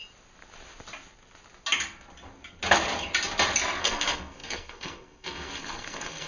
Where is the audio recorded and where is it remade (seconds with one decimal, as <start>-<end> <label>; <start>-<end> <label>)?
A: 0.0-3.8 recorded; 3.8-6.3 remade